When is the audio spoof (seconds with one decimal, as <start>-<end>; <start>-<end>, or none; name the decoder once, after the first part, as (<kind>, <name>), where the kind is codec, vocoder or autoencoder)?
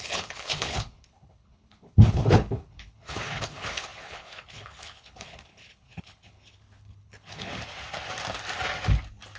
0.0-7.5 (codec, HILCodec)